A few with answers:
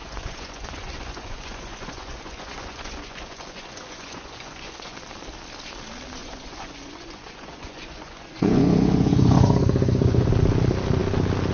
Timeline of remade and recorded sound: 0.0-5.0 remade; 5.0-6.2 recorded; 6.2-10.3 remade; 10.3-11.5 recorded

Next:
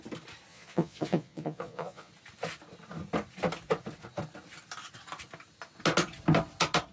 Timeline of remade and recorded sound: 0.0-0.5 recorded; 0.5-2.1 remade; 2.1-6.9 recorded

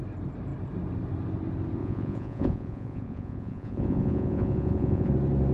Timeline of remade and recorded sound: 0.0-1.8 recorded; 1.8-5.1 remade; 5.1-5.5 recorded

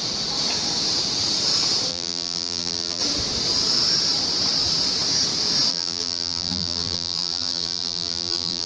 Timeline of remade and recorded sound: 0.0-1.9 recorded; 1.9-3.0 remade; 3.0-5.7 recorded; 5.7-8.7 remade

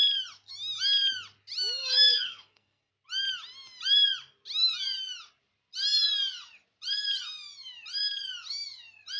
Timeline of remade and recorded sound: 0.0-1.8 recorded; 1.8-2.9 remade; 2.9-9.2 recorded

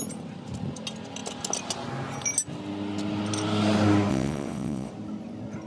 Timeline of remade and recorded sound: 0.0-4.1 recorded; 4.1-4.9 remade; 4.9-5.7 recorded

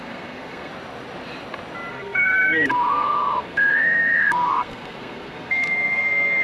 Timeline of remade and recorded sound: 0.0-0.7 remade; 0.7-1.9 recorded; 1.9-6.4 remade